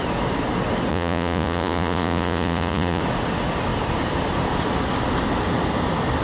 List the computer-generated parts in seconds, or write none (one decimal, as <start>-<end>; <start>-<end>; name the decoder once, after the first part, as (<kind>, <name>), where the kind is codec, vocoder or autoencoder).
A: 0.9-3.0 (vocoder, Vocos)